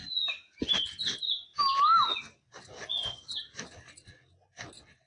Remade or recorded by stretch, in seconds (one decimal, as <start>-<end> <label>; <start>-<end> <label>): 0.0-5.1 recorded